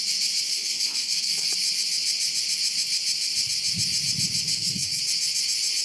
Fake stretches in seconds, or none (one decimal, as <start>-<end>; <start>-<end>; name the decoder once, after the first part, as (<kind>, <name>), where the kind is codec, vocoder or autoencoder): 0.5-1.5 (codec, SNAC); 4.5-5.0